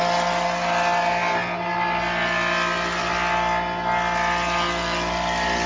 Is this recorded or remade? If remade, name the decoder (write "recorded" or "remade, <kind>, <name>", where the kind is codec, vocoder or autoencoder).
recorded